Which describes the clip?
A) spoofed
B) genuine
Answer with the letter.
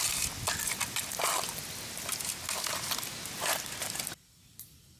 B